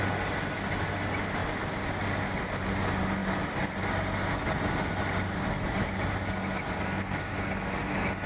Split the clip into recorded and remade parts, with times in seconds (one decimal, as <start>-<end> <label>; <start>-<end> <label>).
0.0-8.3 recorded